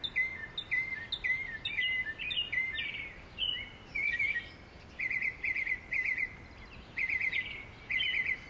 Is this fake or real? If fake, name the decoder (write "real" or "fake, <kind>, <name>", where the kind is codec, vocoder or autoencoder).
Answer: real